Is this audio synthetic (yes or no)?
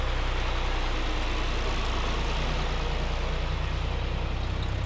no